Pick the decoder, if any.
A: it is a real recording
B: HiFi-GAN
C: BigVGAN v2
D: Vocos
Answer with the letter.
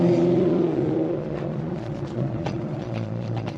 D